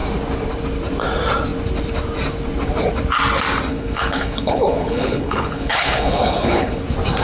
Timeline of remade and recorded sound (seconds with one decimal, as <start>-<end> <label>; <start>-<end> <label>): 0.0-3.7 recorded; 3.7-6.8 remade; 6.8-7.2 recorded